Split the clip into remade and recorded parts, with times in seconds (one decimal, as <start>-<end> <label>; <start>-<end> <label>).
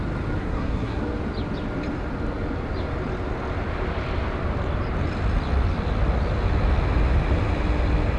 0.0-0.4 recorded; 0.4-1.0 remade; 1.0-8.2 recorded